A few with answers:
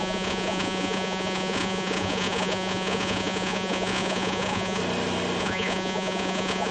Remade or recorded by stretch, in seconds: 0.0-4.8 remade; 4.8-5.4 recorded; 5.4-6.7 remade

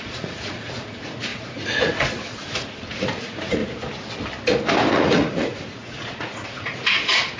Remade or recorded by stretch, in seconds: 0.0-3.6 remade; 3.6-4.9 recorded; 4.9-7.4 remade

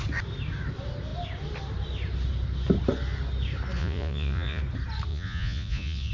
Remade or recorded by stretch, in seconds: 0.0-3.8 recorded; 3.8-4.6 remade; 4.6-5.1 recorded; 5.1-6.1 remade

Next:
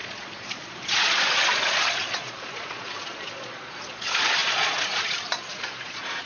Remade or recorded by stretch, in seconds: 0.0-6.3 remade